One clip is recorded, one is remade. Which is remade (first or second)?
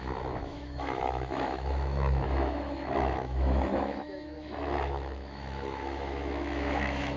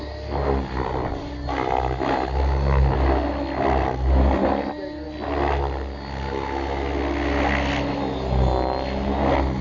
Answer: first